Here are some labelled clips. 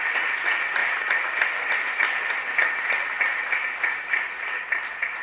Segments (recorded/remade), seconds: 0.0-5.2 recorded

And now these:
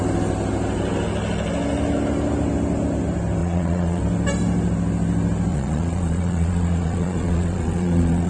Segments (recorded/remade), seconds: 0.0-3.4 recorded; 3.4-4.0 remade; 4.0-5.5 recorded; 5.5-8.3 remade

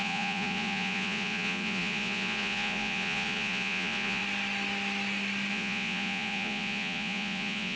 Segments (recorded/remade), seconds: 0.0-4.2 remade; 4.2-5.5 recorded; 5.5-7.8 remade